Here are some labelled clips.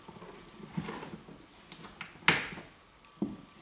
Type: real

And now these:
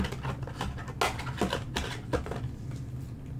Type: real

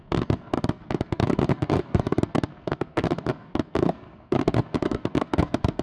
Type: fake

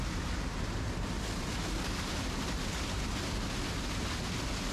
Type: real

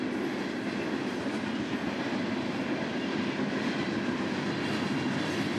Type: real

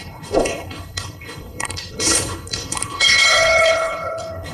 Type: fake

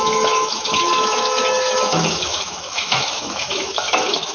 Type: fake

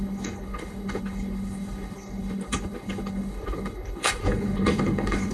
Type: fake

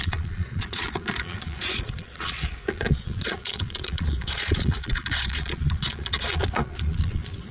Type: fake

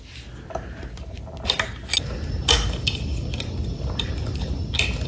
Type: real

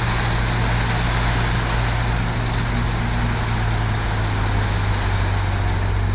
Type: real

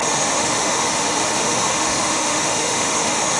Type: fake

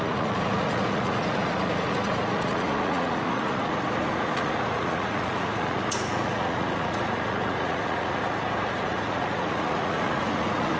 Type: fake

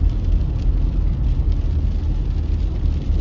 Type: real